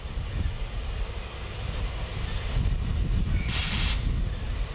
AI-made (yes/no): no